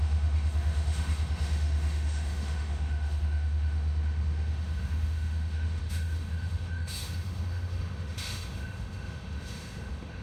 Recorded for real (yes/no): no